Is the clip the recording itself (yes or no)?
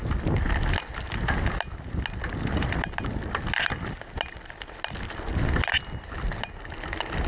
yes